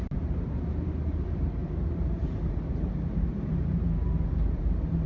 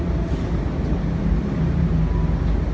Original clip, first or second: second